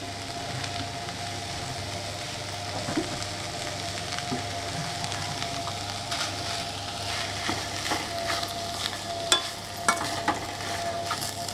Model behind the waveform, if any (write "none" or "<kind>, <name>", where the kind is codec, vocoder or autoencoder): none